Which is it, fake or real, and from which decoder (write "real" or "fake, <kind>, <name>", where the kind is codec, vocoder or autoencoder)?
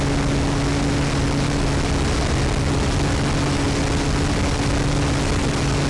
real